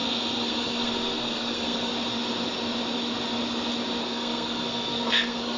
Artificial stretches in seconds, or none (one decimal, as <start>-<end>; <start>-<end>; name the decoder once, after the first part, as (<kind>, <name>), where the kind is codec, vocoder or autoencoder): 0.0-1.9 (codec, SNAC); 4.0-5.6